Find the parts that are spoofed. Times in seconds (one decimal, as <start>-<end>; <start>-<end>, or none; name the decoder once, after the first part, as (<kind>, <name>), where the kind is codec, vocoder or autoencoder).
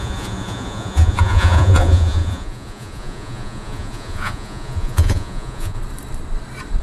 0.0-5.8 (vocoder, Vocos)